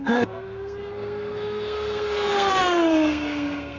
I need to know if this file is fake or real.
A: fake